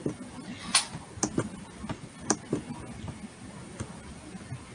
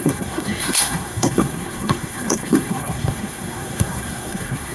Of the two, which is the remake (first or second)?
second